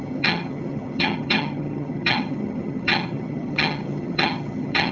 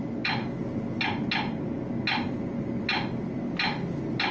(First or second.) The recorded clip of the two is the second